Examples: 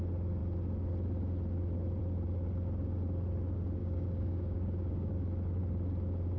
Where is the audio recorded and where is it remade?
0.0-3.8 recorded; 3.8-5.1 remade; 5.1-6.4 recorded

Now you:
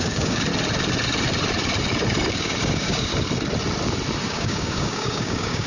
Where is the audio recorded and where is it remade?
0.0-0.5 remade; 0.5-2.3 recorded; 2.3-3.1 remade; 3.1-4.2 recorded; 4.2-5.7 remade

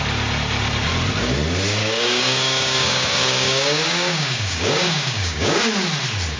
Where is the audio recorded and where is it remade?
0.0-1.8 recorded; 1.8-5.6 remade; 5.6-6.4 recorded

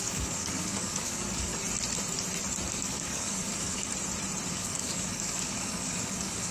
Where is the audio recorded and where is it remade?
0.0-1.5 remade; 1.5-2.7 recorded; 2.7-3.9 remade; 3.9-4.5 recorded; 4.5-6.5 remade

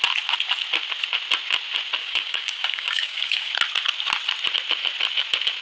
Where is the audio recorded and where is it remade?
0.0-2.0 recorded; 2.0-3.5 remade; 3.5-5.6 recorded

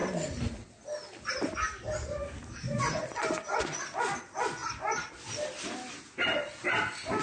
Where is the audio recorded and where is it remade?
0.0-2.2 recorded; 2.2-2.8 remade; 2.8-7.2 recorded

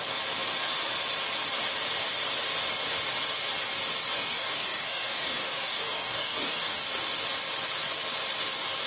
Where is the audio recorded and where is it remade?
0.0-4.1 recorded; 4.1-6.8 remade; 6.8-8.9 recorded